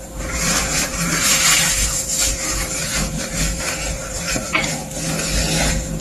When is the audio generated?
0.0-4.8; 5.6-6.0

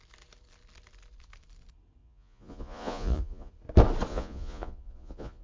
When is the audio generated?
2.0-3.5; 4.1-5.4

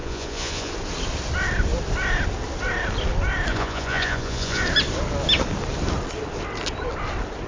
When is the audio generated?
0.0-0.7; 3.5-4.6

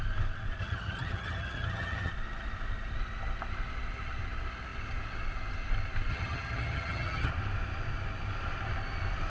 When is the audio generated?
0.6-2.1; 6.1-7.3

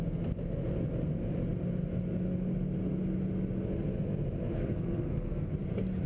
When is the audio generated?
4.6-5.5